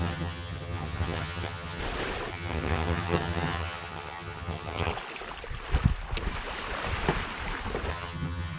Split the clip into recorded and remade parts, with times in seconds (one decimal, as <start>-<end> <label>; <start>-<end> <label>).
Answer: 0.0-1.8 remade; 1.8-2.3 recorded; 2.3-4.9 remade; 4.9-7.9 recorded; 7.9-8.6 remade

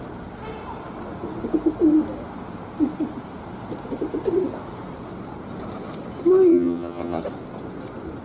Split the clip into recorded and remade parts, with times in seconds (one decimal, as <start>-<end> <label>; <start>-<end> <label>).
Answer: 0.0-6.5 recorded; 6.5-7.2 remade; 7.2-8.2 recorded

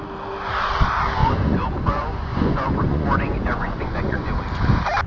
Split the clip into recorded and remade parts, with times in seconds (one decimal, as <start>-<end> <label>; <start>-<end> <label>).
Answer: 0.0-1.2 recorded; 1.2-4.3 remade; 4.3-5.1 recorded

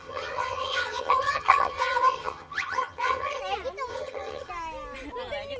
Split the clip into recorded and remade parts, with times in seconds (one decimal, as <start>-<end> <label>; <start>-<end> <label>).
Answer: 0.0-3.4 remade; 3.4-3.9 recorded; 3.9-4.5 remade; 4.5-5.6 recorded

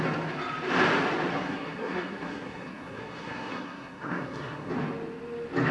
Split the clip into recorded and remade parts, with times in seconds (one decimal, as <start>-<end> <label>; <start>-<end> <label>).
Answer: 0.0-1.3 recorded; 1.3-4.7 remade; 4.7-5.7 recorded